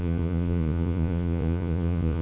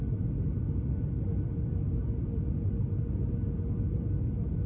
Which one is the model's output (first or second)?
first